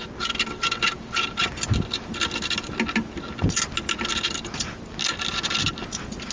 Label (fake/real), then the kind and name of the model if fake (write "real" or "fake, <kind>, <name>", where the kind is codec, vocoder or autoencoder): real